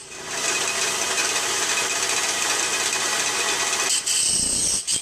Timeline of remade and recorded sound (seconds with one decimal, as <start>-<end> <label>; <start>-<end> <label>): 0.0-1.2 recorded; 1.2-4.2 remade; 4.2-5.0 recorded